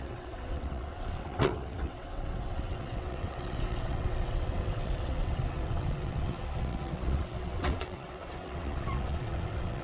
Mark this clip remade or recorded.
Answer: remade